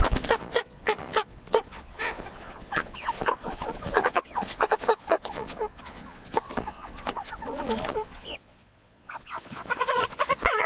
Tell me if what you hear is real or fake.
fake